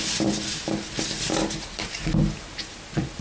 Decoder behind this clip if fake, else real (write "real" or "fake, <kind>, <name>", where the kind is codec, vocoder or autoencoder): real